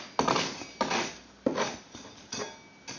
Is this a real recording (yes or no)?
yes